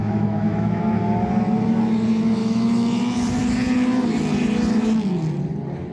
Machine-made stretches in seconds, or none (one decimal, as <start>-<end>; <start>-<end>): 0.0-0.8; 2.4-3.0